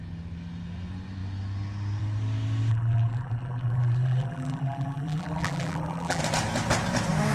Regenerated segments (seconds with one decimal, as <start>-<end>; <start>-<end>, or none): 2.7-6.2